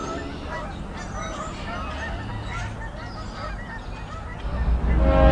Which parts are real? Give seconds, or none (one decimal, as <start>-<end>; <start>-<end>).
0.0-5.3